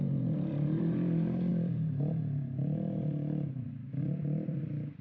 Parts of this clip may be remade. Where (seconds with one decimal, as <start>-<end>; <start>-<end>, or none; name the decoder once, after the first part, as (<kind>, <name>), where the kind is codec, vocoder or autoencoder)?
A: 0.0-5.0 (vocoder, BigVGAN v2)